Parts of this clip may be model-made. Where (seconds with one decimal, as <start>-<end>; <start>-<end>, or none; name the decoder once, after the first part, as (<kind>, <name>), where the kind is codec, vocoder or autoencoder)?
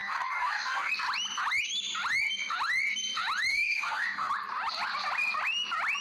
0.0-0.9 (codec, DAC); 3.5-4.3